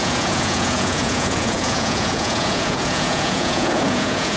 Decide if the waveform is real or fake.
fake